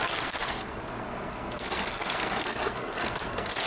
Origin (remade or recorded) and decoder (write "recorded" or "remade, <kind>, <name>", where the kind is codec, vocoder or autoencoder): remade, codec, SNAC